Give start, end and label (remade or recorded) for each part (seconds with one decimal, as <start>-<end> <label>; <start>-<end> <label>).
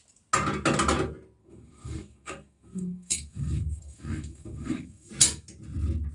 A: 0.0-1.4 recorded; 1.4-5.1 remade; 5.1-6.1 recorded